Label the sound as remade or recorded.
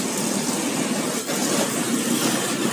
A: recorded